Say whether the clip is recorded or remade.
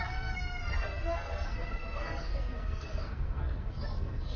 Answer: remade